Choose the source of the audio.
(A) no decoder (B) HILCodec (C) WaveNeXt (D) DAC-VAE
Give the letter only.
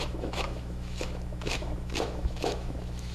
D